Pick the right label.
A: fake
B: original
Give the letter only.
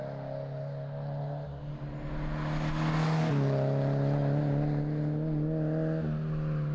B